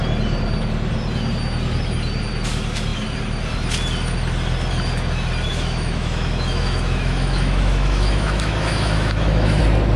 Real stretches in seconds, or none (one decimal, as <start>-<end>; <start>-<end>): 0.0-5.5; 9.6-10.0